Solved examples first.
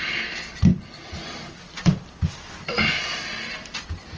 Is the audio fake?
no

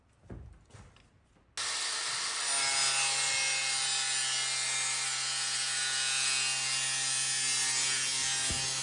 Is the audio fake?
no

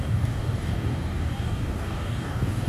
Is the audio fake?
yes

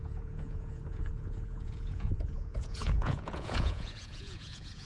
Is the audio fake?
yes